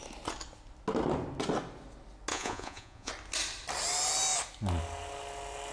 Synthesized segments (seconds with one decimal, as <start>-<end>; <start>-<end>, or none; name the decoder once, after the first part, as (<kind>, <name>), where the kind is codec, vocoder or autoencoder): 2.3-3.1 (vocoder, Vocos)